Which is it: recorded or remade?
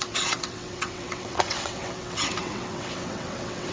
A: remade